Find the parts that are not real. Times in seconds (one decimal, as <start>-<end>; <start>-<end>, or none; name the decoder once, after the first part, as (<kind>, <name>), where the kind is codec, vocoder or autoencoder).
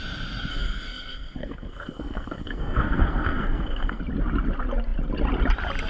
0.5-4.0 (codec, SNAC)